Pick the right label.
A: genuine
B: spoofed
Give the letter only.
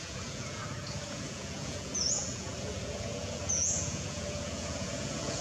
B